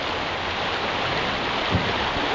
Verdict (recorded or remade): recorded